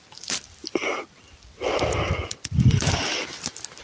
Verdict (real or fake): fake